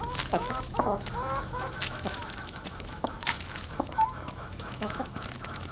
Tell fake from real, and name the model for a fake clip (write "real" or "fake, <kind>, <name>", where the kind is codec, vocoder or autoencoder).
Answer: fake, autoencoder, DAC-VAE